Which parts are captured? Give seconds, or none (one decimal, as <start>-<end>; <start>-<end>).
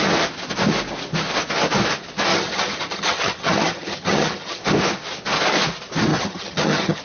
0.0-2.3; 4.6-6.1